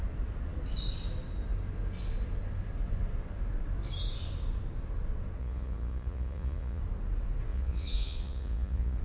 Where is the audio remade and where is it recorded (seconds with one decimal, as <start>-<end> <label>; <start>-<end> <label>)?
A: 0.0-5.4 recorded; 5.4-6.8 remade; 6.8-7.5 recorded; 7.5-9.0 remade